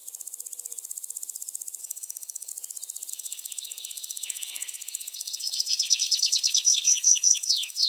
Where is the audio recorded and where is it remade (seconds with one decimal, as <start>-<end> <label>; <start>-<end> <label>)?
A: 0.0-1.8 recorded; 1.8-2.5 remade; 2.5-3.1 recorded; 3.1-7.9 remade